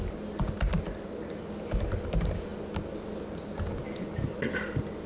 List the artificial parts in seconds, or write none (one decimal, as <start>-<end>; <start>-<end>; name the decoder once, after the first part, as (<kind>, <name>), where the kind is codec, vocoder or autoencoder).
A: none